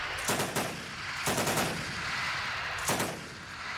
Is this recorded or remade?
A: recorded